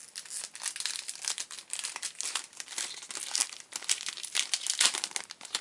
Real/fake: real